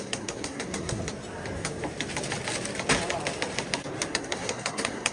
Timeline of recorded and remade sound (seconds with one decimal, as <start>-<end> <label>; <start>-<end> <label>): 0.0-1.0 remade; 1.0-4.1 recorded; 4.1-5.1 remade